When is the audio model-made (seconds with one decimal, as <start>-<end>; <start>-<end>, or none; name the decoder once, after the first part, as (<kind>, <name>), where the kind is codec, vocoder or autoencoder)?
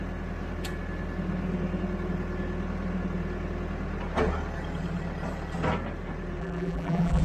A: 6.4-7.2 (vocoder, BigVGAN v2)